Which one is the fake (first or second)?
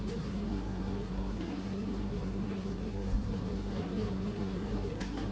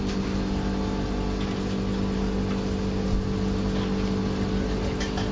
first